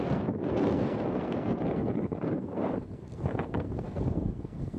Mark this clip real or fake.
fake